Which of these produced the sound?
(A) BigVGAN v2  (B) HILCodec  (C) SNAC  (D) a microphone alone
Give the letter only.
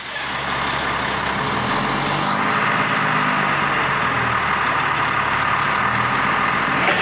D